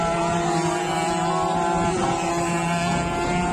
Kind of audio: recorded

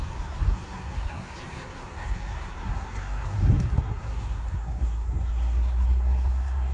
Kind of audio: remade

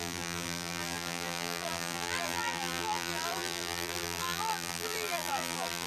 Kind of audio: remade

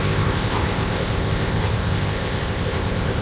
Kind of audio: remade